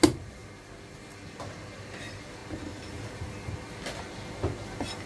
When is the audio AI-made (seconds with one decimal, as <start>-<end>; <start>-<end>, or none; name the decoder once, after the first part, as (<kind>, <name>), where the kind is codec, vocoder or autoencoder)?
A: none